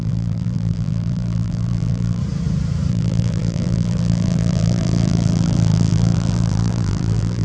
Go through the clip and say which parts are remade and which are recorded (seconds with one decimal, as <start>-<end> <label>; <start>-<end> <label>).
0.0-2.2 remade; 2.2-2.9 recorded; 2.9-7.4 remade